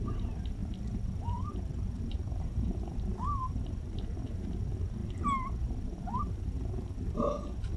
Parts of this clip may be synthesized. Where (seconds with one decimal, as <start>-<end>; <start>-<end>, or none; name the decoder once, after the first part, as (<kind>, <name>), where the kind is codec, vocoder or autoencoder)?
0.0-0.6 (vocoder, BigVGAN v2); 2.0-5.0; 6.3-7.8